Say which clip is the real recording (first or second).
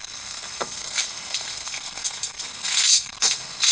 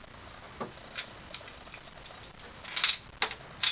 second